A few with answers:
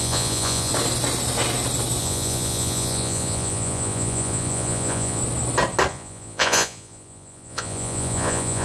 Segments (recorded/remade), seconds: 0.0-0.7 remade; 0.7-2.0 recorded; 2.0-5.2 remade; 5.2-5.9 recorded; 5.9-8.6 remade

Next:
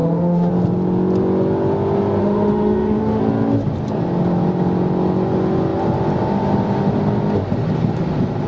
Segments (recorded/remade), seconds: 0.0-0.5 remade; 0.5-2.2 recorded; 2.2-3.2 remade; 3.2-8.5 recorded

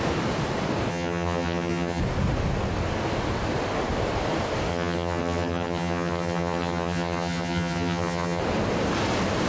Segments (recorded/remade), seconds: 0.0-0.9 recorded; 0.9-2.0 remade; 2.0-4.7 recorded; 4.7-8.4 remade; 8.4-9.5 recorded

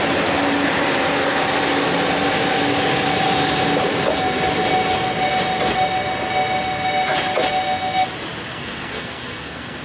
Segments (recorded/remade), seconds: 0.0-8.5 recorded; 8.5-9.8 remade

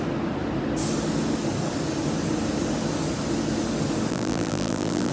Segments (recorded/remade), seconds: 0.0-4.1 recorded; 4.1-5.1 remade

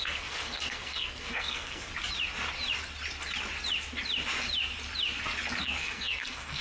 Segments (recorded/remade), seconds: 0.0-1.9 remade; 1.9-5.6 recorded; 5.6-6.6 remade